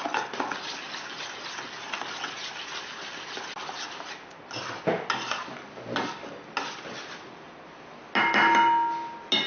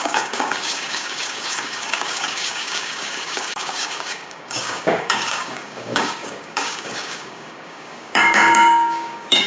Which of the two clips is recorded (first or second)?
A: first